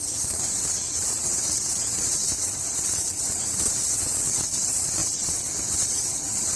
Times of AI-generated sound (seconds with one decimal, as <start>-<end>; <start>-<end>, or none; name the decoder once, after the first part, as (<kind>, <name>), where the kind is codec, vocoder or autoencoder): 0.0-6.6 (vocoder, WaveNeXt)